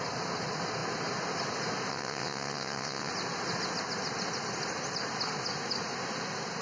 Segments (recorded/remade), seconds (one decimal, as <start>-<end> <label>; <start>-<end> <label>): 0.0-1.9 recorded; 1.9-3.1 remade; 3.1-6.6 recorded